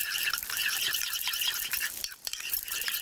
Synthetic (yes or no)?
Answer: yes